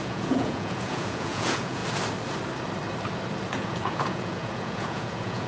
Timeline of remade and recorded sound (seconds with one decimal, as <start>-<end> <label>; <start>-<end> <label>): 0.0-1.8 remade; 1.8-3.5 recorded; 3.5-5.5 remade